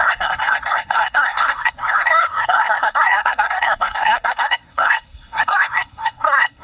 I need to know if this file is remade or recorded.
remade